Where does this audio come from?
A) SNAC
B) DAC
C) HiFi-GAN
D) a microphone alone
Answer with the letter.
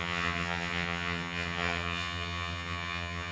C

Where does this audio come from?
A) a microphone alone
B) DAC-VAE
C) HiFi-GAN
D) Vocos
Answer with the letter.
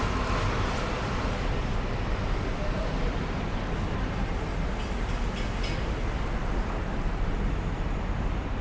A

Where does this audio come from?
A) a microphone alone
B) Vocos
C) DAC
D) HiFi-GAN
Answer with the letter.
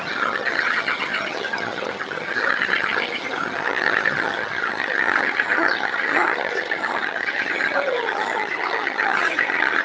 D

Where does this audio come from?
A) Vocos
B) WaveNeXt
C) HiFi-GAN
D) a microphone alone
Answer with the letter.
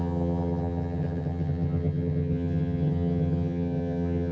C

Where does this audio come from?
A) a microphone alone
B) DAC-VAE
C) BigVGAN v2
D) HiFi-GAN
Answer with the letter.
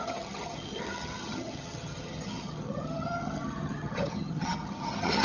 D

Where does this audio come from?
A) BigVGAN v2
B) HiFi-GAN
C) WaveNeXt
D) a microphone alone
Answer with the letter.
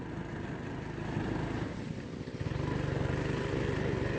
D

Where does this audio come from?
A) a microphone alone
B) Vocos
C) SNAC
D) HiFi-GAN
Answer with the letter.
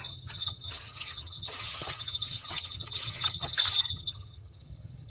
D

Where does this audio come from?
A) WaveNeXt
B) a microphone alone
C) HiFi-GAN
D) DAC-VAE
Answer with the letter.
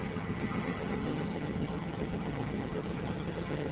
C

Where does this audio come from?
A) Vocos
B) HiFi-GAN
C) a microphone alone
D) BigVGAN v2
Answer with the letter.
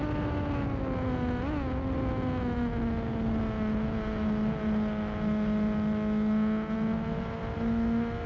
C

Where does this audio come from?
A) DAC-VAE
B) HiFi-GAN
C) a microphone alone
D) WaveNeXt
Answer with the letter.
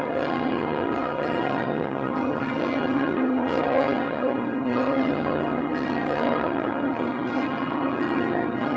B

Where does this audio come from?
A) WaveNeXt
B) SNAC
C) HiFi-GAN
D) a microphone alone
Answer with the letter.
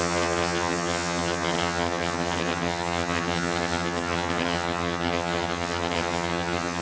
C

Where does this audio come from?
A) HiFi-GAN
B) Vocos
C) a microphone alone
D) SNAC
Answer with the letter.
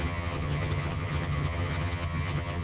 A